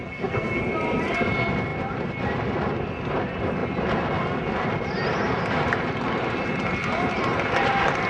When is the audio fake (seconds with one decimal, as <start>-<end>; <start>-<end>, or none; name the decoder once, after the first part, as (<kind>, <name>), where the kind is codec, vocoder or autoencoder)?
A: 0.0-0.6 (codec, SNAC)

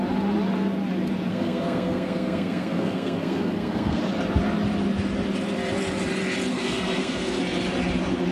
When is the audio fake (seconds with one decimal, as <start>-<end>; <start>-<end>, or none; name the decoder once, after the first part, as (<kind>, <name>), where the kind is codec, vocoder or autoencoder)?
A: 1.3-4.0 (codec, SNAC); 6.5-7.4

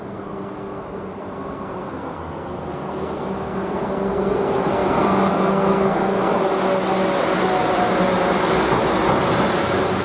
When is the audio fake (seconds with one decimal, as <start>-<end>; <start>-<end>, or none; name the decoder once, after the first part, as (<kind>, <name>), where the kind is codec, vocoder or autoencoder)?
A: 0.0-6.4 (codec, SNAC)

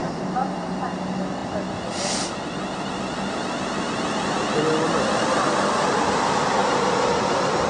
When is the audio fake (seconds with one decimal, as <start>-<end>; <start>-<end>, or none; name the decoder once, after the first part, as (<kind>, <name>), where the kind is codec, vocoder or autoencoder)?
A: none

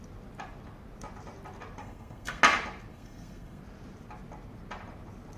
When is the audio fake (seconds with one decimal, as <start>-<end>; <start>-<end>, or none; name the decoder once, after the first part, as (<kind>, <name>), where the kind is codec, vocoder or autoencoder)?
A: 1.8-2.4 (codec, SNAC); 2.9-3.6